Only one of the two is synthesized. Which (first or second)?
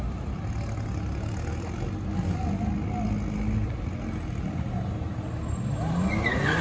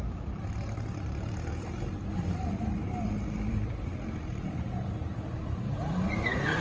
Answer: second